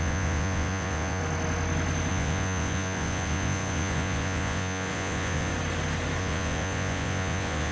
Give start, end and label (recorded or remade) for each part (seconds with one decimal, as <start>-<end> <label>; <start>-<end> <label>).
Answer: 0.0-1.2 remade; 1.2-2.1 recorded; 2.1-5.5 remade; 5.5-6.2 recorded; 6.2-7.7 remade